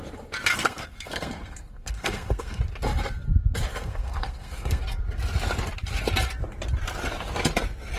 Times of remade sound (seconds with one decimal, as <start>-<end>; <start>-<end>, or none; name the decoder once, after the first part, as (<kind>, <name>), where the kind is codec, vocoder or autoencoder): 0.6-2.6 (codec, SNAC); 3.7-4.8